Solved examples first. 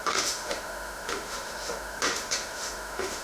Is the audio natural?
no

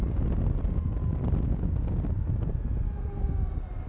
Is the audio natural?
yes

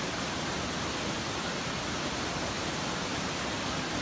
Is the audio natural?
yes